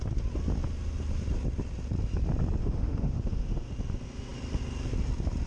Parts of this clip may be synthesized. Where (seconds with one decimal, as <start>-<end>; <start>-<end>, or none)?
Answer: 2.6-3.7

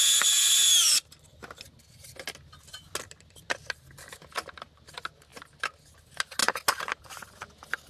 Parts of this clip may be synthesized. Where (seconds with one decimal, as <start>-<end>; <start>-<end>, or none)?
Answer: none

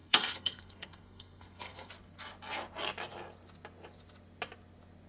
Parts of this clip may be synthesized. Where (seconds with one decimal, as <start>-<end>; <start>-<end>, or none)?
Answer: 0.0-1.9

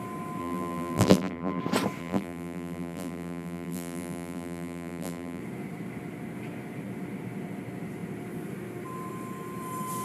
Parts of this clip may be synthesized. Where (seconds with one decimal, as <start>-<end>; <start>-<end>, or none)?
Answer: 0.4-1.6; 2.0-5.4

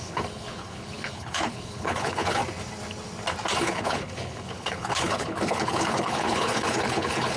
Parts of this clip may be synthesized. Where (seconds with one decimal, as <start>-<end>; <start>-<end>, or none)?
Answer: 0.0-2.4; 3.6-7.4

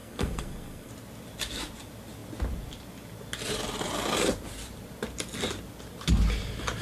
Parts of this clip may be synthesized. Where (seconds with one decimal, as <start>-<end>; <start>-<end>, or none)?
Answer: 0.0-0.9